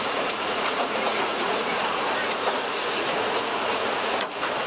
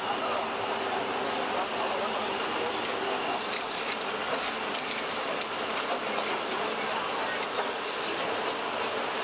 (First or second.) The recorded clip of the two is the second